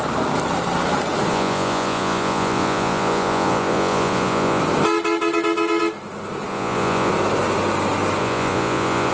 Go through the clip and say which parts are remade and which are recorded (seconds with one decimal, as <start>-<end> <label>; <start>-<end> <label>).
0.0-1.3 recorded; 1.3-4.6 remade; 4.6-6.5 recorded; 6.5-7.1 remade; 7.1-8.2 recorded; 8.2-9.1 remade